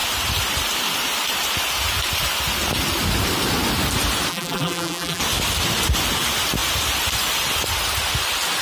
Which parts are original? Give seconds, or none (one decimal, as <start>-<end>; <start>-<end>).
0.0-4.3; 5.2-8.6